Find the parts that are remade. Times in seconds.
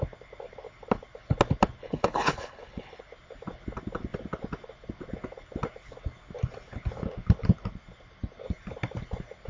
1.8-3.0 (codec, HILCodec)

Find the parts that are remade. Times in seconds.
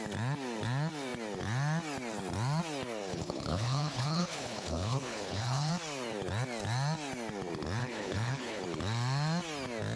3.1-5.7 (codec, HILCodec); 7.8-8.6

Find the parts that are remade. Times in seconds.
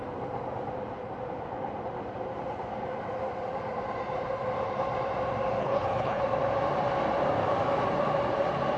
5.6-6.2 (codec, HILCodec)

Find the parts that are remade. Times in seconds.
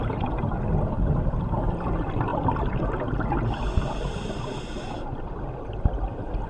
none